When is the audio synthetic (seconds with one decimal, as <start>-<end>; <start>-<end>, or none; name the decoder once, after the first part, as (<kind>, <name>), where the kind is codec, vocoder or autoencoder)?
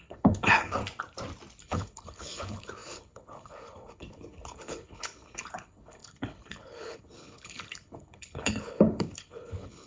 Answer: 0.0-0.8 (codec, HILCodec); 1.6-9.9